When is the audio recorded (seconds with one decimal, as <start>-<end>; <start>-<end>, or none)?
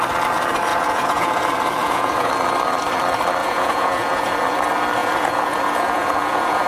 0.0-0.7; 1.4-1.8; 2.3-3.4; 4.3-5.0